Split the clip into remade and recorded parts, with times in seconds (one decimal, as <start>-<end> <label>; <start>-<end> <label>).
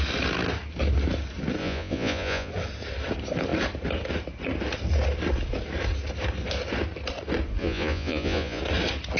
0.0-1.6 recorded; 1.6-2.5 remade; 2.5-7.6 recorded; 7.6-8.6 remade; 8.6-9.2 recorded